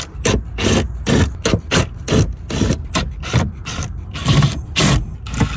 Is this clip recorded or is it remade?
recorded